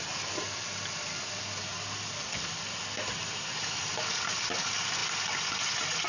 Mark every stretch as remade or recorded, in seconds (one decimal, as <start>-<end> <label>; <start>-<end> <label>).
0.0-6.1 recorded